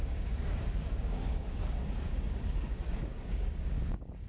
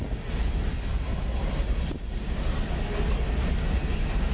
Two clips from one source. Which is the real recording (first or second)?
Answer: second